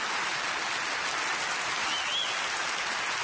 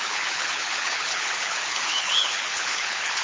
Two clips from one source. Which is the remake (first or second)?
second